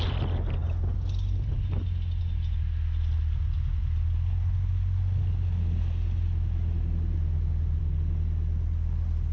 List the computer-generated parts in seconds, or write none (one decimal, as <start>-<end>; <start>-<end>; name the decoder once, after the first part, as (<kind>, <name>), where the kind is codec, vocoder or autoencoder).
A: none